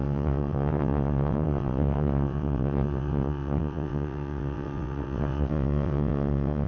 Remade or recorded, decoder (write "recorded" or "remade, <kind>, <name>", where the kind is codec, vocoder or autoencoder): remade, vocoder, WaveNeXt